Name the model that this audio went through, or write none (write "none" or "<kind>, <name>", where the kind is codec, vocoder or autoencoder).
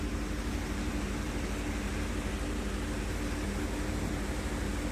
none